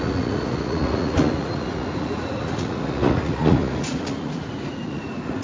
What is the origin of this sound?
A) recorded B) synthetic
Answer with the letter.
B